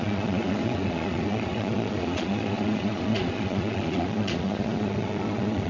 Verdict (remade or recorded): remade